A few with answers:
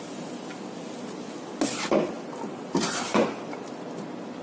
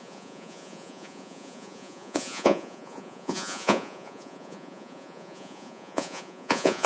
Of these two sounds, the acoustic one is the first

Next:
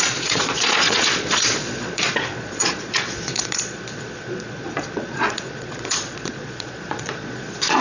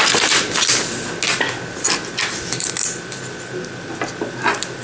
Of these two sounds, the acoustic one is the second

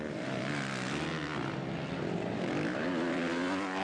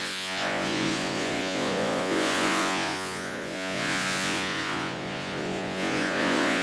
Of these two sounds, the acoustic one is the first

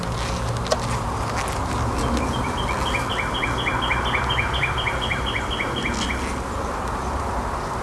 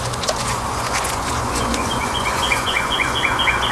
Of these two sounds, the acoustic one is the first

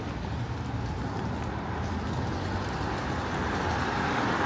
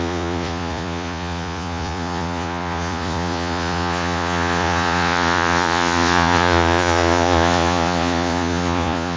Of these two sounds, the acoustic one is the first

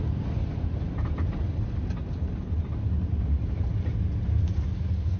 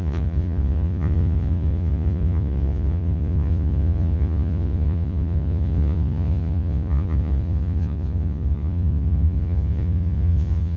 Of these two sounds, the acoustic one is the first